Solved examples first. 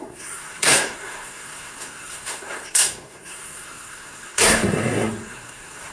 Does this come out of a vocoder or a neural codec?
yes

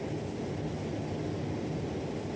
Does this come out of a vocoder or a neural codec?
no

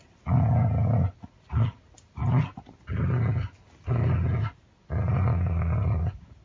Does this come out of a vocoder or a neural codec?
no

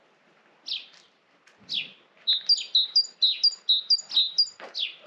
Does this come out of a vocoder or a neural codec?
no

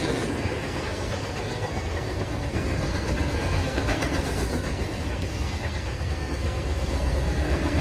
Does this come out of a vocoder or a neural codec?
yes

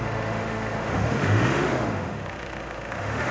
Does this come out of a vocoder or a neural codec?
yes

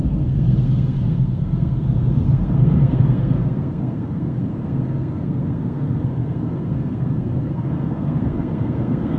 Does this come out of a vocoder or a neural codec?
yes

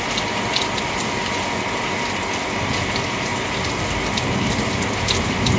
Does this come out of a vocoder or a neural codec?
no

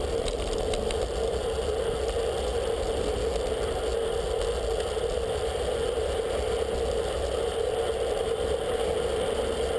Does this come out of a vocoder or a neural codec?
no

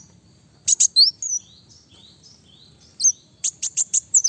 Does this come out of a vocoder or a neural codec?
no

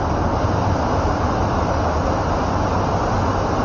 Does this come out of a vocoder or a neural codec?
no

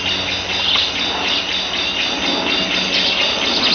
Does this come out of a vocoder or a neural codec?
no